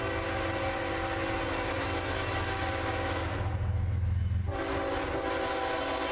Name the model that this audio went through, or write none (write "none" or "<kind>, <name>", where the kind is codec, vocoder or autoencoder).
none